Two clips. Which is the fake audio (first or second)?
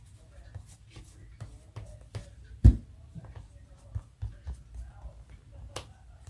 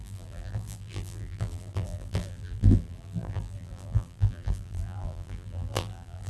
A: second